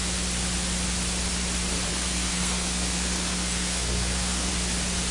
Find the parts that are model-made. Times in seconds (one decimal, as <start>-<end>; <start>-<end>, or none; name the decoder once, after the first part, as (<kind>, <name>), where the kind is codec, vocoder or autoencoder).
1.9-4.5 (codec, SNAC)